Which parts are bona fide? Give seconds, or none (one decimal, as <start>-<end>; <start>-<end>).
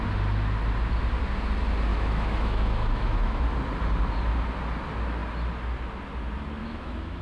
0.0-1.9; 3.4-6.6